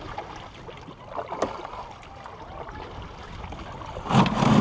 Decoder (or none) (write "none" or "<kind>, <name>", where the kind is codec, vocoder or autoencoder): none